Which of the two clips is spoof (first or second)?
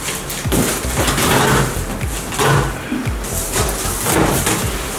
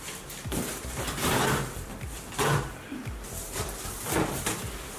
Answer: second